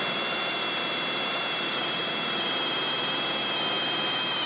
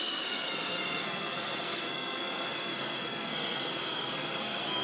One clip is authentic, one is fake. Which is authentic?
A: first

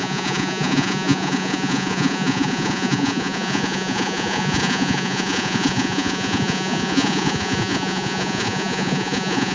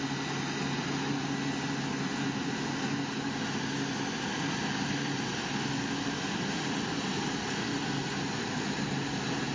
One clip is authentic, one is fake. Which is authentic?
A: second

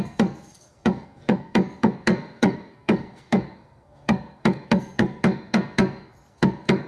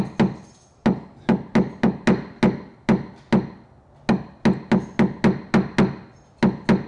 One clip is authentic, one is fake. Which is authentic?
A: second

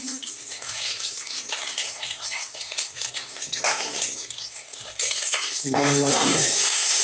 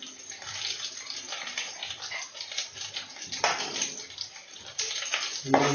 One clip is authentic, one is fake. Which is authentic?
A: second